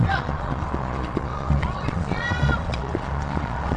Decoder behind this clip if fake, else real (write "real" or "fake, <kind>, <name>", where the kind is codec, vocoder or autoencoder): fake, vocoder, Vocos